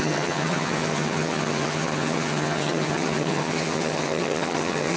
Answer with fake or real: fake